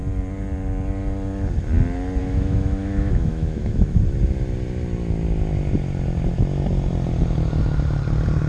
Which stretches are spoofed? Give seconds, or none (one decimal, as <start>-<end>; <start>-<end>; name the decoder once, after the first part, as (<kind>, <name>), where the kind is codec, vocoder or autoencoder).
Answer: 2.2-4.0 (autoencoder, DAC-VAE)

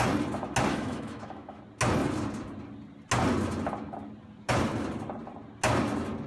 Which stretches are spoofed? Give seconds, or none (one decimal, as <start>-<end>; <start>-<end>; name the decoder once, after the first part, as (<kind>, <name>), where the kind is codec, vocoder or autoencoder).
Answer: 0.7-1.6 (autoencoder, DAC-VAE)

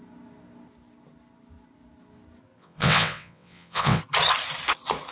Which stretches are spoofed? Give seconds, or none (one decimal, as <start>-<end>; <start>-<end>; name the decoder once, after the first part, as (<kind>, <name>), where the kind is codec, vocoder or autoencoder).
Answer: 2.6-4.0 (vocoder, WaveNeXt)

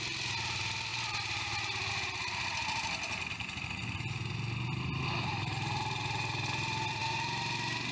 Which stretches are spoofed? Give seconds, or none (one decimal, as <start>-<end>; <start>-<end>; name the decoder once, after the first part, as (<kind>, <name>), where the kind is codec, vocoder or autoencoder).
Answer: none

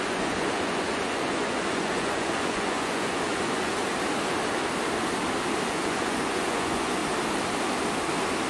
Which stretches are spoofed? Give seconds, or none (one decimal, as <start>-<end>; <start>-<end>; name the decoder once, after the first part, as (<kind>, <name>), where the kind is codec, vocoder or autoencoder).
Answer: 0.0-3.8 (vocoder, Vocos); 5.7-7.0